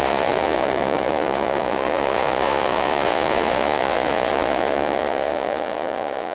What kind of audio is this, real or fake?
fake